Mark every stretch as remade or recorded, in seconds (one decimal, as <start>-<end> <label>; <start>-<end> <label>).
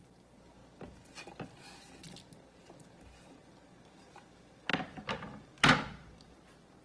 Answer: 0.0-6.8 recorded